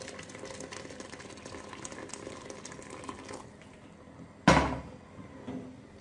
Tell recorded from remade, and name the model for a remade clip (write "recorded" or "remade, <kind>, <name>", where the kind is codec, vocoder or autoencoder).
recorded